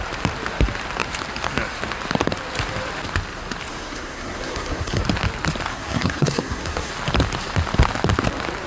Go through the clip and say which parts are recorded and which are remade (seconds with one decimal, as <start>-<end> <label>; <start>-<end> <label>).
0.0-3.7 recorded; 3.7-5.0 remade; 5.0-5.7 recorded; 5.7-6.9 remade; 6.9-8.7 recorded